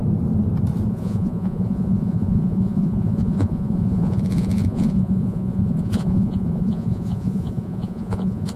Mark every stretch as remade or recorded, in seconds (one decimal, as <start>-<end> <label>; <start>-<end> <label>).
0.0-0.9 recorded; 0.9-8.6 remade